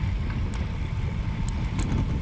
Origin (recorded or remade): recorded